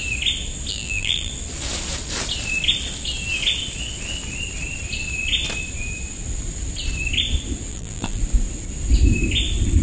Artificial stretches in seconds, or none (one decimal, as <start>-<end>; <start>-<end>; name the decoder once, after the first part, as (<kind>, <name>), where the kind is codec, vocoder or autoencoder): 0.7-1.3 (vocoder, BigVGAN v2); 7.7-8.2